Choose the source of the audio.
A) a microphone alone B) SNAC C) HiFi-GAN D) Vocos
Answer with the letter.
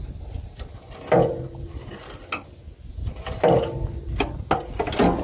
A